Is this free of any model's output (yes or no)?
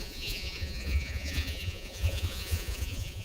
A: no